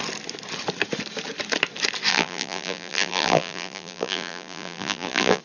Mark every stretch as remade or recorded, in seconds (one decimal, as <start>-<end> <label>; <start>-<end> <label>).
0.0-2.1 recorded; 2.1-5.4 remade